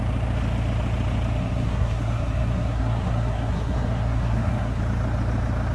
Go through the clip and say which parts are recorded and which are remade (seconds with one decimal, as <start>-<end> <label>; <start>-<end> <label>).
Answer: 0.0-1.4 recorded; 1.4-4.8 remade; 4.8-5.7 recorded